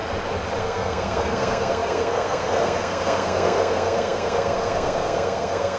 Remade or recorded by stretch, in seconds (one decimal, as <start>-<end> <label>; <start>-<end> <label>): 0.0-0.6 recorded; 0.6-5.8 remade